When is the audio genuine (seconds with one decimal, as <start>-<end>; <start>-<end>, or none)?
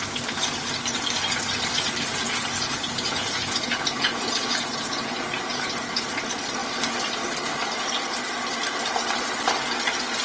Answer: 0.0-2.1; 6.0-10.2